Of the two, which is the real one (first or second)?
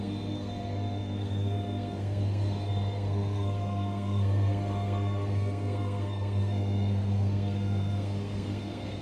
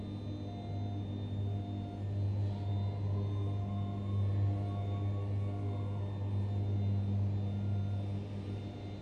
second